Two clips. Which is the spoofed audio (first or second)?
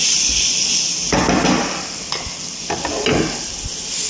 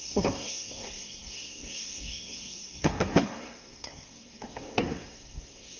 second